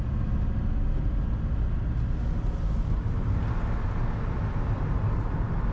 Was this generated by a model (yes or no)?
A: no